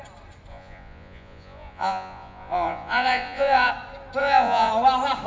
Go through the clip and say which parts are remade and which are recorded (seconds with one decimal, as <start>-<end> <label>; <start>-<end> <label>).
0.0-0.5 recorded; 0.5-3.7 remade; 3.7-4.2 recorded; 4.2-4.7 remade; 4.7-5.3 recorded